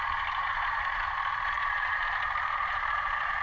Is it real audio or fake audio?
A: fake